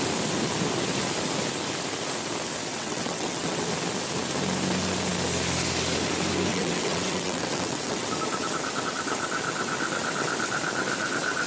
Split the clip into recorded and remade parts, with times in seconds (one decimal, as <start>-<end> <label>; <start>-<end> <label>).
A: 0.0-2.7 recorded; 2.7-3.6 remade; 3.6-6.5 recorded; 6.5-8.1 remade; 8.1-11.5 recorded